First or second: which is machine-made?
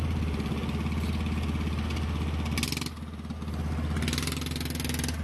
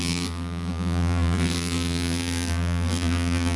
second